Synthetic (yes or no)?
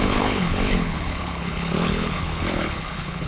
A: yes